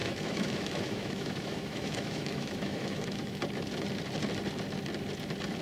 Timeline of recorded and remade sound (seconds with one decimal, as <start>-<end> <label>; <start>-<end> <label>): 0.0-3.4 remade; 3.4-5.6 recorded